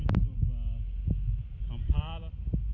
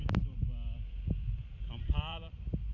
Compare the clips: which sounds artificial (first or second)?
second